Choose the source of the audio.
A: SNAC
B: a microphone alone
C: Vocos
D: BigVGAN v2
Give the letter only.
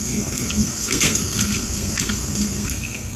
A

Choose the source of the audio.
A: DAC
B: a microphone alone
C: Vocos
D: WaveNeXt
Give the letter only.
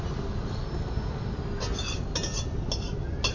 B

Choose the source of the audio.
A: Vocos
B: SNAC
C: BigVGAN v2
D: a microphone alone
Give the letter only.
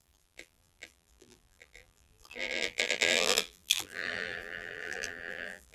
C